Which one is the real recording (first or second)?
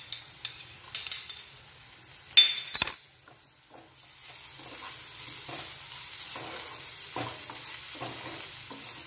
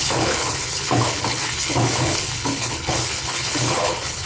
first